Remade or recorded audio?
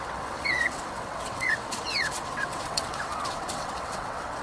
remade